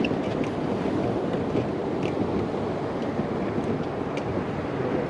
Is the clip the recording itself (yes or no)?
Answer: yes